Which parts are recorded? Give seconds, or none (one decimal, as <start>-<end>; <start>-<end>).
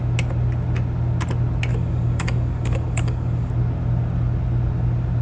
0.0-1.7; 3.5-5.2